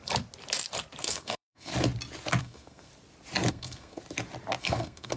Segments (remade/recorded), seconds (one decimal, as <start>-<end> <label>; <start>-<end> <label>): 0.0-1.0 recorded; 1.0-1.7 remade; 1.7-2.4 recorded; 2.4-2.9 remade; 2.9-3.5 recorded; 3.5-4.0 remade; 4.0-4.6 recorded; 4.6-5.2 remade